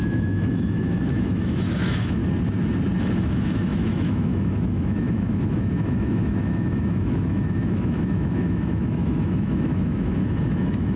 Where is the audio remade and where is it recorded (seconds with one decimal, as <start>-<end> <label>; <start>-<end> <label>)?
0.0-2.2 remade; 2.2-3.0 recorded; 3.0-11.0 remade